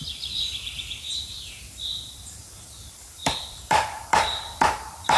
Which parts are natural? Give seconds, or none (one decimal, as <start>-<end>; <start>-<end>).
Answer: none